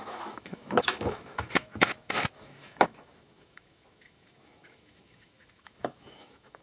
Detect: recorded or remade remade